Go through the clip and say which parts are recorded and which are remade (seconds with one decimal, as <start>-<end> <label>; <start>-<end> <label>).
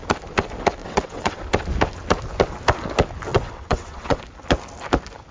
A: 0.0-0.8 recorded; 0.8-1.4 remade; 1.4-3.3 recorded; 3.3-4.2 remade; 4.2-5.3 recorded